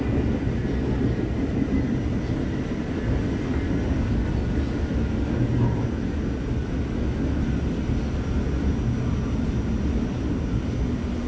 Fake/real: real